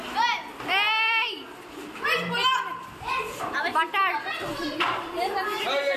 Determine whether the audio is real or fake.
real